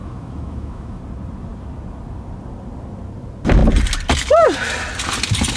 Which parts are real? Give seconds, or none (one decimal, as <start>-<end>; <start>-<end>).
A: 1.0-5.6